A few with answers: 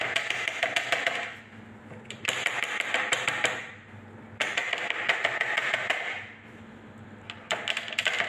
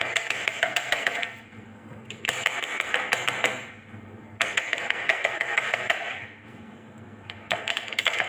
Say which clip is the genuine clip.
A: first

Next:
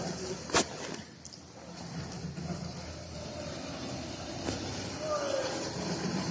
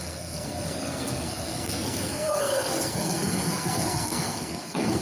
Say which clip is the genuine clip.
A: first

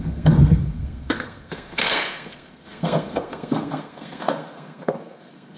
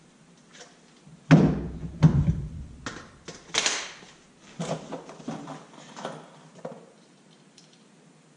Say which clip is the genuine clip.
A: second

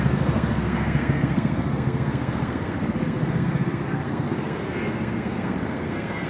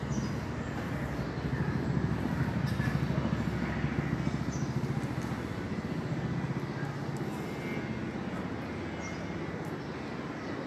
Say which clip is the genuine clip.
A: second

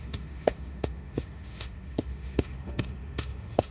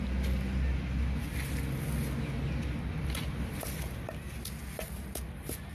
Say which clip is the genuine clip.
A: second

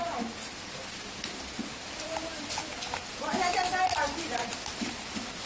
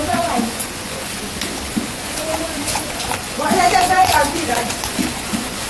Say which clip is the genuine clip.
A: first